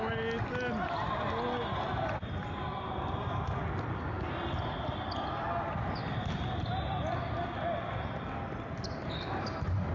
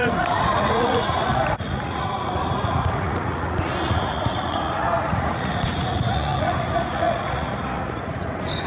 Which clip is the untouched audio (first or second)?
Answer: first